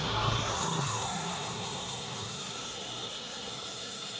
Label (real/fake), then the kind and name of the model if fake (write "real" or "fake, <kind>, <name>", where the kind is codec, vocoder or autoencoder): fake, codec, SNAC